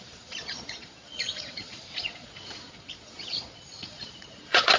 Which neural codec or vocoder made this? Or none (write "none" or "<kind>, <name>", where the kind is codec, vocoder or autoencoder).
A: vocoder, Vocos